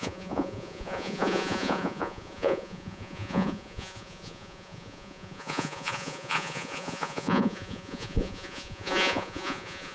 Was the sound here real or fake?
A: fake